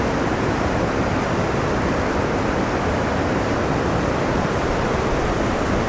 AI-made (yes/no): no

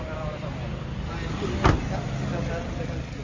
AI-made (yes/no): no